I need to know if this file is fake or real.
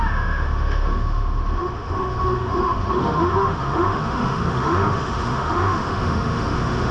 fake